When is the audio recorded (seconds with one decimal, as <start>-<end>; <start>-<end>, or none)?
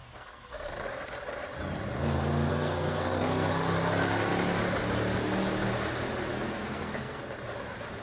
0.7-2.5; 3.5-6.3; 7.2-8.0